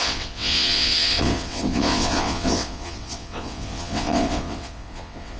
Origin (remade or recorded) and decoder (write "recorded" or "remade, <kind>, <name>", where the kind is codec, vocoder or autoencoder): remade, vocoder, WaveNeXt